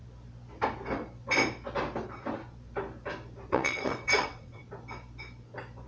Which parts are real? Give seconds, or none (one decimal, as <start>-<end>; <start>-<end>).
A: 0.0-3.5; 4.6-5.9